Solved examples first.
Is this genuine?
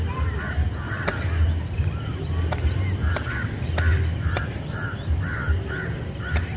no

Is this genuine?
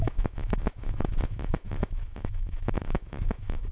no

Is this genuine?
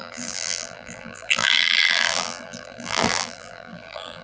no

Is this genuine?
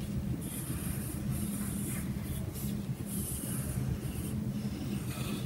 yes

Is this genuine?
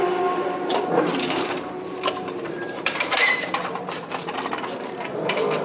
no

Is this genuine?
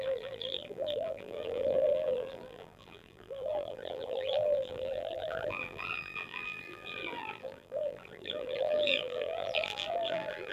no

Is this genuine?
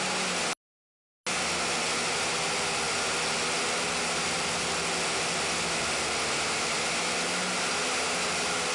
yes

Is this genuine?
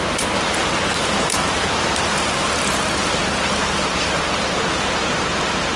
no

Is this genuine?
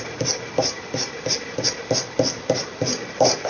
yes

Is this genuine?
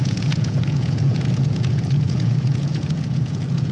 no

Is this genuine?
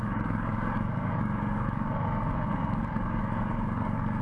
no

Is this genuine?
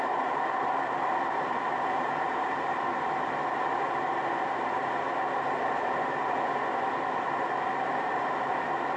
yes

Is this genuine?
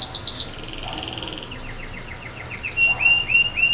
yes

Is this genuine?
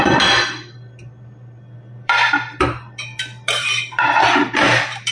no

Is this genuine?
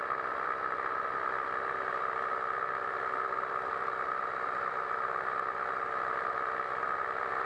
no